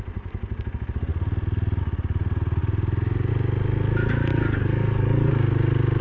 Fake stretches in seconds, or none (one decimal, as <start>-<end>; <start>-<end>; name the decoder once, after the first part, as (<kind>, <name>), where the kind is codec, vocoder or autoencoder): 4.3-5.3 (codec, DAC)

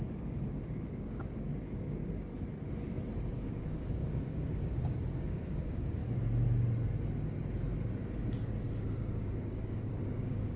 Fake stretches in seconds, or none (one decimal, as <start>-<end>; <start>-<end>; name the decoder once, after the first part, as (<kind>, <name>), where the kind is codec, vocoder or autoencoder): 0.0-2.3 (codec, DAC); 3.3-6.0; 9.1-10.6

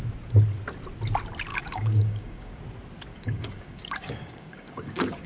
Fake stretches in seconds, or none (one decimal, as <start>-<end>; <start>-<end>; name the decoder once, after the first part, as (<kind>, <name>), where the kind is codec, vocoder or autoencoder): 1.5-2.6 (codec, DAC); 3.1-5.3

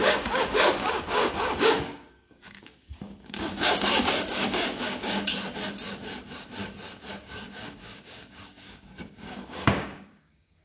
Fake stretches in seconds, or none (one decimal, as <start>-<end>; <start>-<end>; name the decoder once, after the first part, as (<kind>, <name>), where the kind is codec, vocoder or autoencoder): 0.0-5.3 (codec, DAC); 7.1-10.6

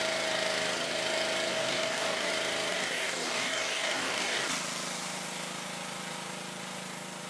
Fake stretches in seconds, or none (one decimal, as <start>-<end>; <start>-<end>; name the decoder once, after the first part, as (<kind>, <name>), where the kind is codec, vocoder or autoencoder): 1.5-2.3 (codec, DAC); 2.7-4.5